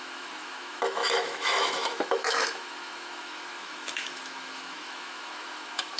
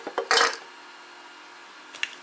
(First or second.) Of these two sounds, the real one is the second